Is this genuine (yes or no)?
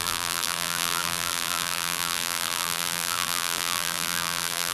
no